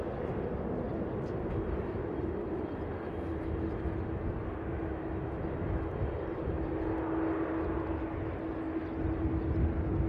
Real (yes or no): yes